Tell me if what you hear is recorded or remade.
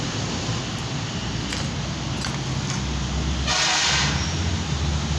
recorded